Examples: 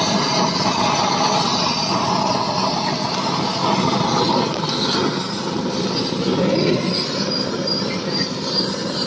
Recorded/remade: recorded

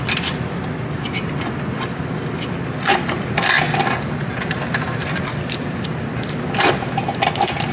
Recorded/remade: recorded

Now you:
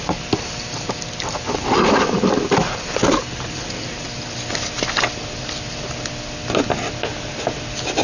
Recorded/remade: recorded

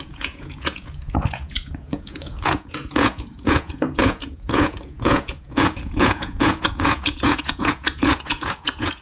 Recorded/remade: remade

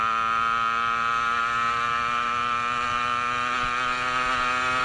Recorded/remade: recorded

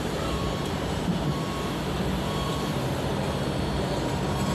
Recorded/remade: remade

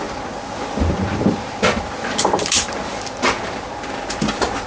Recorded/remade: recorded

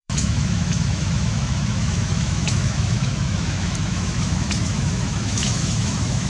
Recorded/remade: remade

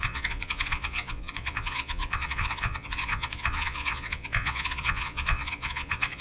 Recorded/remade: remade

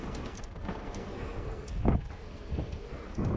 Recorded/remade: remade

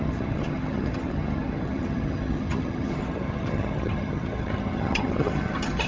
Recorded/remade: remade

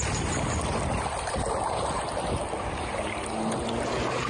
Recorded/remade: recorded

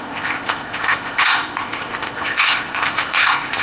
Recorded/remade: remade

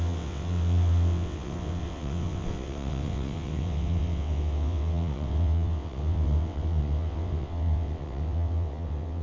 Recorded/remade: remade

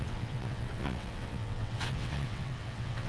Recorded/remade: remade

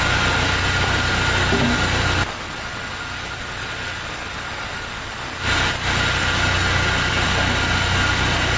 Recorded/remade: recorded